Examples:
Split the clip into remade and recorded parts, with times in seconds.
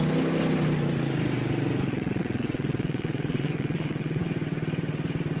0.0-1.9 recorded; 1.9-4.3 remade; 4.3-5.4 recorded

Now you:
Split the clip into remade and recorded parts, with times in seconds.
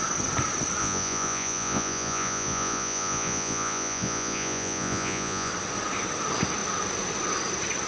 0.0-0.8 recorded; 0.8-5.5 remade; 5.5-7.9 recorded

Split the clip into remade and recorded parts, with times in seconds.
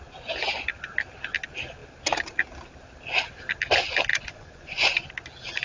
0.0-4.1 recorded; 4.1-5.1 remade; 5.1-5.6 recorded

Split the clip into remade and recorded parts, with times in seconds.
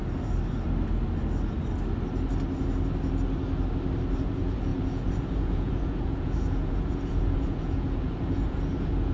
0.0-4.2 recorded; 4.2-9.1 remade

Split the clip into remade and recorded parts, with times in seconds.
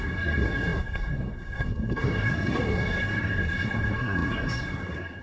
0.0-5.2 remade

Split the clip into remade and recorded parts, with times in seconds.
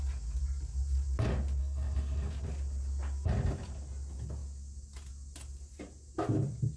0.0-1.6 recorded; 1.6-2.3 remade; 2.3-6.8 recorded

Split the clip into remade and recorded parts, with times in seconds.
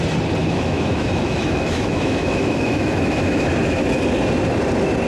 0.0-0.4 recorded; 0.4-3.5 remade; 3.5-5.1 recorded